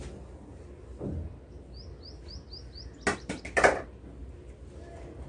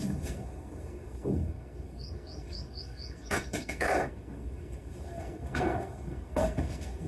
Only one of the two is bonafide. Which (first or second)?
first